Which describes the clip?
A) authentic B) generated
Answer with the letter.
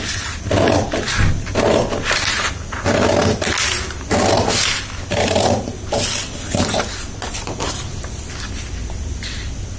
A